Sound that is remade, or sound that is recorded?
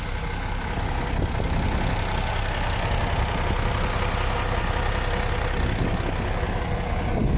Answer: recorded